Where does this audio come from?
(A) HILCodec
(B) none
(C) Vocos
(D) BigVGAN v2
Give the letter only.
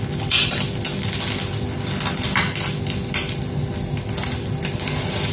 B